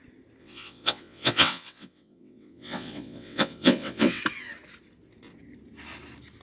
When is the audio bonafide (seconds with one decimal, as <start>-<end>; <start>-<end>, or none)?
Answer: 0.0-0.4; 4.2-6.4